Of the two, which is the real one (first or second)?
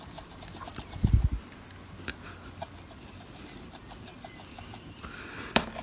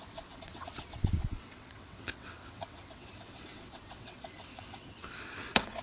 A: first